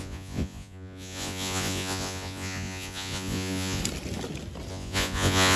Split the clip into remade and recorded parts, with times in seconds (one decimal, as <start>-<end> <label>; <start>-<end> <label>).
0.0-3.8 remade; 3.8-4.7 recorded; 4.7-5.6 remade